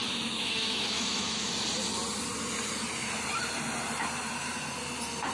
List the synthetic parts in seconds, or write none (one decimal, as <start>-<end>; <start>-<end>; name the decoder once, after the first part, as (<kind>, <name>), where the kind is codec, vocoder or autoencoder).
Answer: 0.0-1.5 (autoencoder, DAC-VAE)